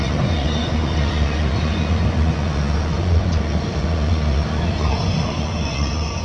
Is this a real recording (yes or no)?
no